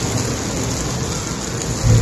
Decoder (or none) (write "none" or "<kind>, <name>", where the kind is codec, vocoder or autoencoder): none